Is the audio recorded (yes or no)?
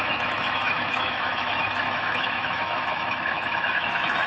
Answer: no